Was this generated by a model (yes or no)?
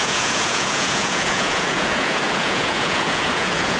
yes